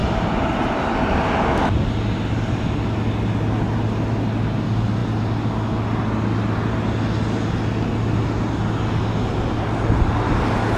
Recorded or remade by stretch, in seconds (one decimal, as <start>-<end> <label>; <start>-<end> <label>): 0.0-0.9 remade; 0.9-10.8 recorded